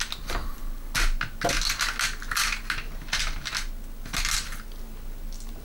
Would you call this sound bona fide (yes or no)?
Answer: yes